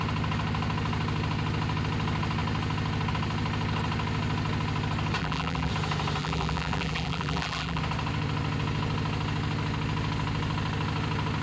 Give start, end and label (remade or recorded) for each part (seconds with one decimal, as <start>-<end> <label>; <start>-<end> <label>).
0.0-5.2 recorded; 5.2-5.7 remade; 5.7-6.2 recorded; 6.2-7.8 remade; 7.8-11.4 recorded